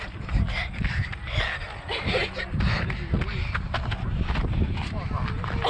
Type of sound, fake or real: real